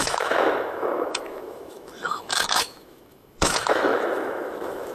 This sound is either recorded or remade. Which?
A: remade